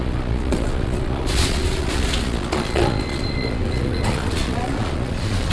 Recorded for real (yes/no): no